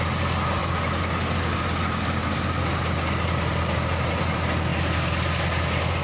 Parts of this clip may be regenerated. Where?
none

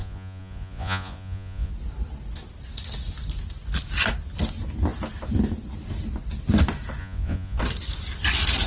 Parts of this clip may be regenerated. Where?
0.0-1.7 (vocoder, Vocos); 7.0-7.6

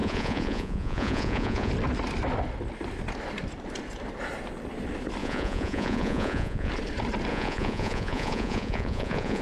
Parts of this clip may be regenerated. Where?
0.0-1.7 (vocoder, Vocos); 5.2-6.7; 7.3-9.4

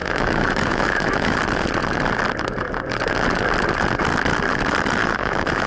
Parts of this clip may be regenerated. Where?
0.0-1.4 (autoencoder, DAC-VAE); 5.0-5.7

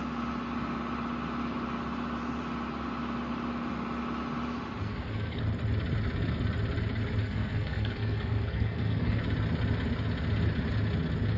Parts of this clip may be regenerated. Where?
4.8-5.4 (codec, SNAC); 7.2-9.2